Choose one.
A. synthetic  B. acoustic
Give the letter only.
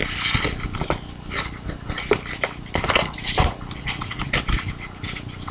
B